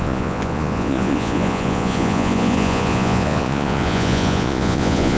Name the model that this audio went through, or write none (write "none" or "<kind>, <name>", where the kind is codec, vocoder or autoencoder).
vocoder, Vocos